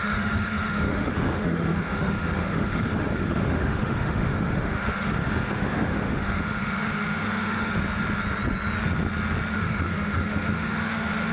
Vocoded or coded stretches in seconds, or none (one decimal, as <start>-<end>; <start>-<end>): 0.0-7.7; 9.5-11.3